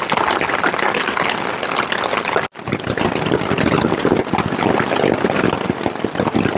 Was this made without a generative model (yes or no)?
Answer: yes